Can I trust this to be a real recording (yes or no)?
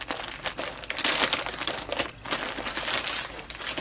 yes